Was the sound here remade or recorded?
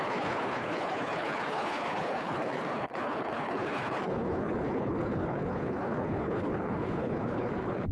remade